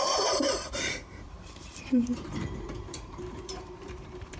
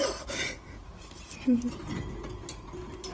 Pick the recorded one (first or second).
second